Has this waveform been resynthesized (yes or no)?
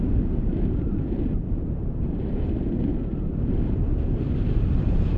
yes